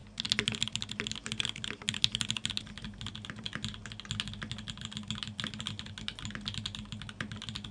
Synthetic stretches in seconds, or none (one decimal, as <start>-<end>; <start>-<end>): none